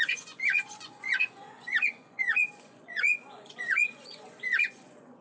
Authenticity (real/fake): fake